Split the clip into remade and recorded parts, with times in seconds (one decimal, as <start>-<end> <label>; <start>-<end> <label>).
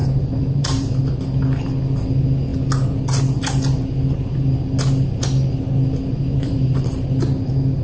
0.0-1.2 remade; 1.2-6.3 recorded; 6.3-7.2 remade; 7.2-7.8 recorded